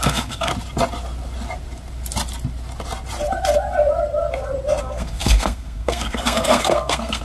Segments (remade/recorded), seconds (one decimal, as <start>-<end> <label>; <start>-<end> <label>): 0.0-0.5 remade; 0.5-4.8 recorded; 4.8-7.2 remade